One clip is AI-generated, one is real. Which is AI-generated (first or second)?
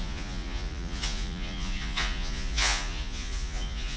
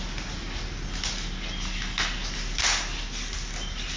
first